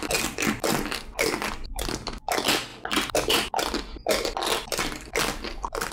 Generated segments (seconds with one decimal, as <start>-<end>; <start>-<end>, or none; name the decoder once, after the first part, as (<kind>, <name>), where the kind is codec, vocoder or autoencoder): none